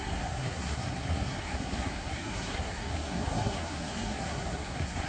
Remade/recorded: remade